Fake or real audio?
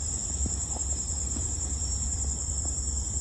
fake